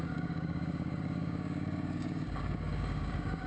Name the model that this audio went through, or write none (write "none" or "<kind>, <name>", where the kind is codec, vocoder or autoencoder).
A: codec, DAC